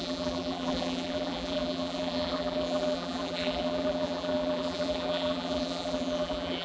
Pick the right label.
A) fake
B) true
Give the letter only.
A